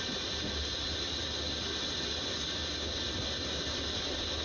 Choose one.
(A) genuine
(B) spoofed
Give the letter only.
A